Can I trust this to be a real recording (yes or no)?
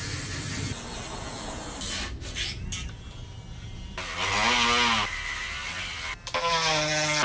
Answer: yes